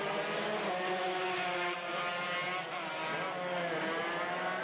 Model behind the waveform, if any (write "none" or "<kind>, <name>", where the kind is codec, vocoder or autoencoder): none